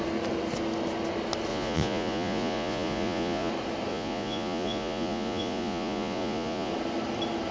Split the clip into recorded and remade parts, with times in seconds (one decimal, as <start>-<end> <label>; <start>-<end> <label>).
0.0-1.5 recorded; 1.5-3.5 remade; 3.5-3.9 recorded; 3.9-6.7 remade; 6.7-7.5 recorded

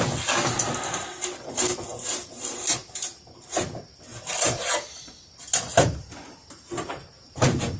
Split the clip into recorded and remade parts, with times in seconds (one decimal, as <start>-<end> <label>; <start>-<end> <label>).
0.0-2.8 recorded; 2.8-3.5 remade; 3.5-4.1 recorded; 4.1-5.1 remade; 5.1-5.7 recorded; 5.7-7.8 remade